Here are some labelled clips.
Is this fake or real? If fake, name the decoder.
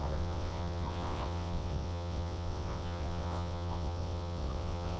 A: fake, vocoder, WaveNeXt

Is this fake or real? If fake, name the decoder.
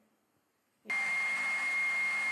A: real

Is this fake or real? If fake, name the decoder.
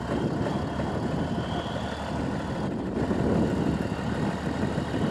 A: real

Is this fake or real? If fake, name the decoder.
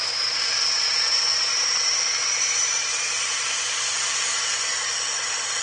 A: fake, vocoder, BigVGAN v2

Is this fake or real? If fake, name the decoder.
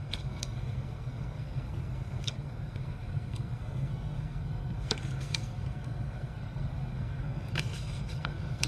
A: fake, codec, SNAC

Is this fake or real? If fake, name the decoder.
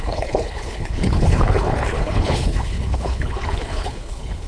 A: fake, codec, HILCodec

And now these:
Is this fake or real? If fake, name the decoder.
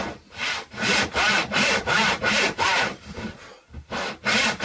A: fake, vocoder, BigVGAN v2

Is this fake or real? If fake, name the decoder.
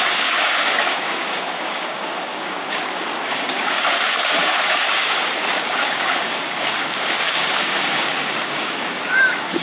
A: fake, codec, DAC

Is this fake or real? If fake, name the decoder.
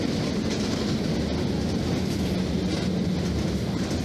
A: real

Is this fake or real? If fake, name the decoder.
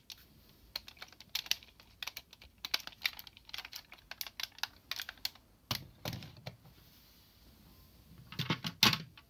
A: real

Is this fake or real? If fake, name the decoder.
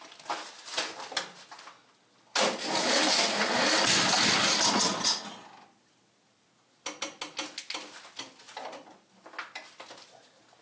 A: real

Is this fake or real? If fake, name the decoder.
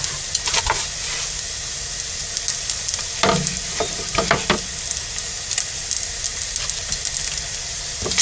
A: real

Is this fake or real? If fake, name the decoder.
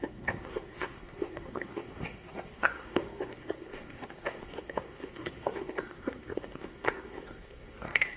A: fake, codec, SNAC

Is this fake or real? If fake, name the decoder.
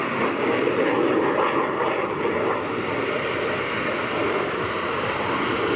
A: real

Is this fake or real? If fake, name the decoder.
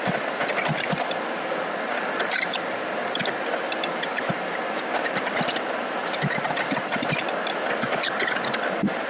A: real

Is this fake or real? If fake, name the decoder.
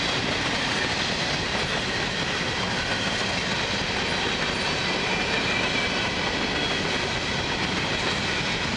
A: real